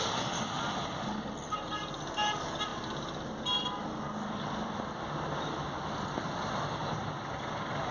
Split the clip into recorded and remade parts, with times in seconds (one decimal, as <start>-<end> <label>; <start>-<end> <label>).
0.0-7.9 recorded